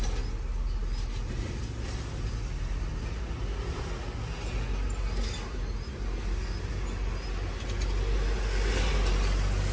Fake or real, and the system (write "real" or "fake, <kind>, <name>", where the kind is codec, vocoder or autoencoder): real